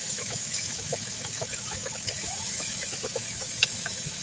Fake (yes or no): yes